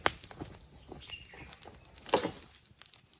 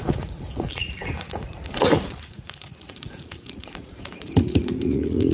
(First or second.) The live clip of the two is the first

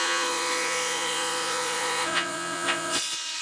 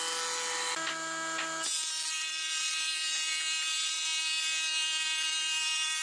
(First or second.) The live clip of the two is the second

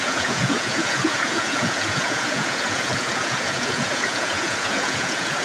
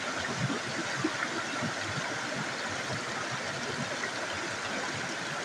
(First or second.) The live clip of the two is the second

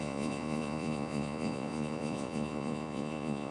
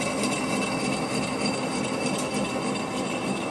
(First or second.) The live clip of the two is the second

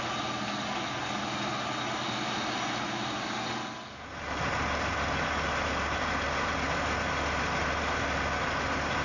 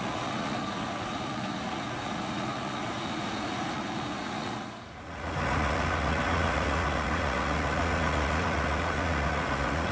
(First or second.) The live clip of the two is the first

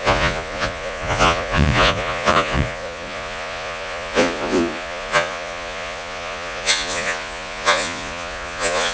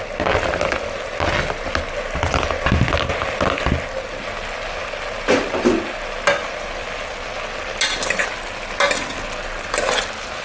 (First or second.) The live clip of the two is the second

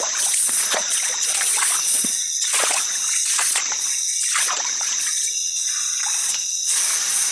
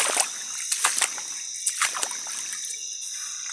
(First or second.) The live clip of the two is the second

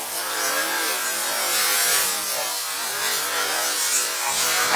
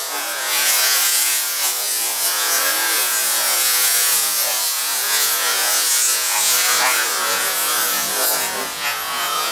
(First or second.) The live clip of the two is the first